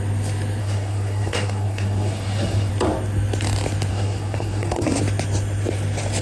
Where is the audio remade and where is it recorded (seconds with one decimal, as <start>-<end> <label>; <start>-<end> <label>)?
0.0-0.6 recorded; 0.6-2.7 remade; 2.7-3.9 recorded; 3.9-5.0 remade; 5.0-6.2 recorded